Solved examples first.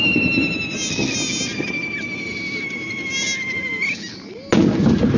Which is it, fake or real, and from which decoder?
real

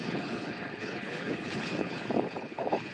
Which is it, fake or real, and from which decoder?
fake, codec, HILCodec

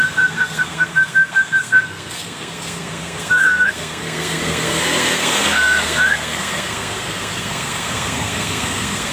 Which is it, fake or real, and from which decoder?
fake, codec, SNAC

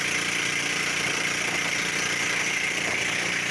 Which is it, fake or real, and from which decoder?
fake, vocoder, BigVGAN v2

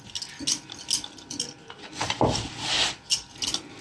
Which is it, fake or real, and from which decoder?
real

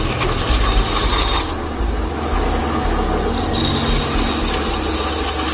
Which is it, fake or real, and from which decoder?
real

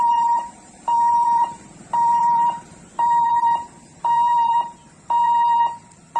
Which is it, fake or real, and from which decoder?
fake, vocoder, BigVGAN v2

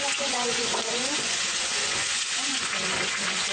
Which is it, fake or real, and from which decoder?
fake, vocoder, Vocos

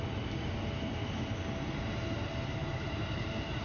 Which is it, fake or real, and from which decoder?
real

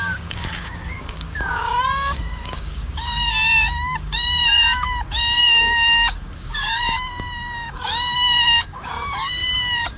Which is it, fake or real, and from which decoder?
fake, codec, DAC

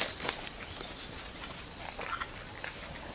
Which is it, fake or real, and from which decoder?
real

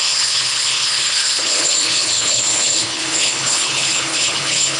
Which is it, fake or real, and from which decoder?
fake, codec, HILCodec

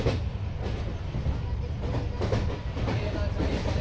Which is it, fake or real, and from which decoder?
fake, vocoder, BigVGAN v2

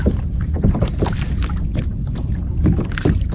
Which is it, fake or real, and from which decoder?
real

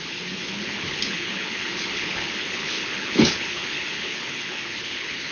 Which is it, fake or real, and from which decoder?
fake, codec, HILCodec